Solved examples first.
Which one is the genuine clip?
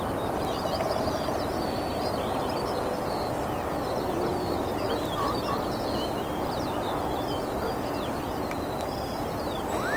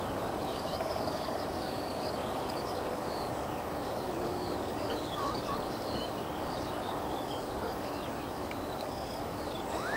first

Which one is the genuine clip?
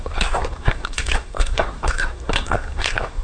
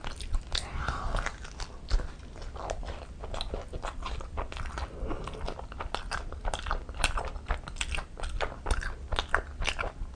second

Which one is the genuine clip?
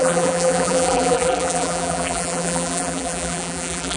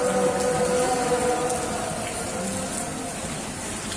second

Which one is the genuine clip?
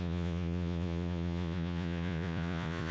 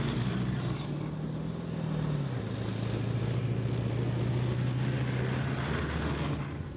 second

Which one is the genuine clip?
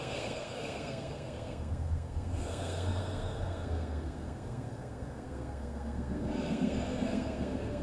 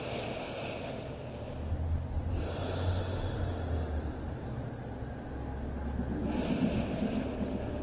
second